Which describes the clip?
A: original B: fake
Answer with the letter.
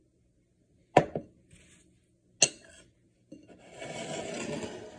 A